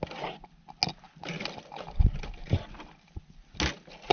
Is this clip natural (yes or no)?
yes